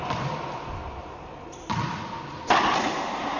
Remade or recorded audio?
recorded